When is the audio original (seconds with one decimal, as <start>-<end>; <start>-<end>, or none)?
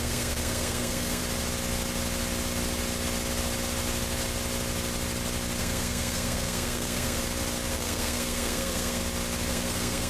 1.2-5.6; 7.2-7.7; 9.0-9.5